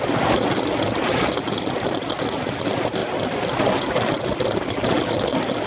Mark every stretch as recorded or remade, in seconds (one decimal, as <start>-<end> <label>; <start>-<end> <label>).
0.0-5.7 recorded